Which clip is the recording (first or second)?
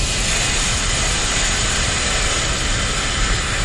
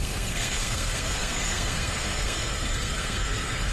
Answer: first